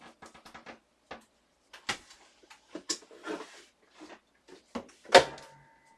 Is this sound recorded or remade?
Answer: recorded